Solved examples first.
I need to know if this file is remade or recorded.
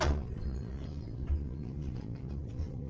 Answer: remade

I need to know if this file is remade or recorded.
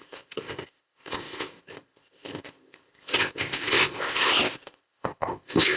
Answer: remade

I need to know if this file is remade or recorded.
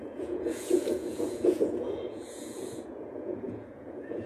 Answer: remade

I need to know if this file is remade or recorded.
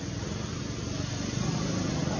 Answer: recorded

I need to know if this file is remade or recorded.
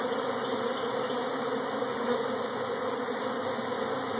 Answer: recorded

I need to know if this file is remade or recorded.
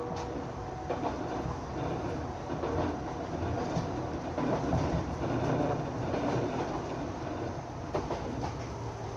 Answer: recorded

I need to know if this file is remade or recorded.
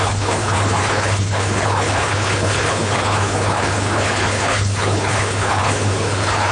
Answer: remade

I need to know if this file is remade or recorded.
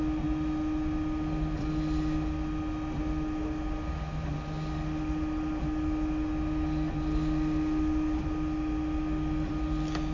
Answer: recorded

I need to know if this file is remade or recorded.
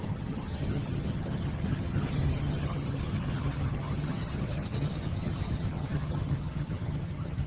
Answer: remade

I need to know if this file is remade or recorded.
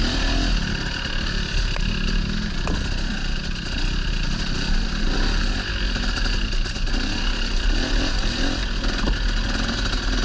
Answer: recorded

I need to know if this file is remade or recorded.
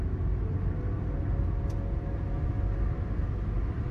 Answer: recorded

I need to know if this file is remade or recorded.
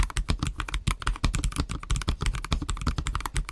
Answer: recorded